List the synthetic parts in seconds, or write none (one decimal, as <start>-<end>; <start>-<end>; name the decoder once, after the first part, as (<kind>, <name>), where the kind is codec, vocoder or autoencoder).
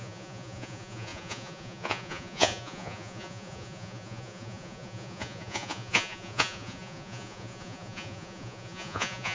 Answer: 0.0-9.3 (vocoder, Vocos)